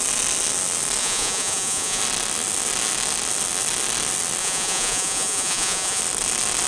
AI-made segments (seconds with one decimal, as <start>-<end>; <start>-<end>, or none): 1.0-2.0; 4.4-6.0